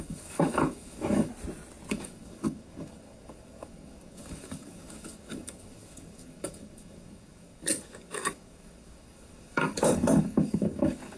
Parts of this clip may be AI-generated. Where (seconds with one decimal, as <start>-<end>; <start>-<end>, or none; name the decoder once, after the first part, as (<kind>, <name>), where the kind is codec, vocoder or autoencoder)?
0.0-1.3 (codec, DAC); 1.9-11.2